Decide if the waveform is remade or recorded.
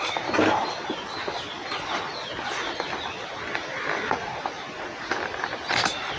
recorded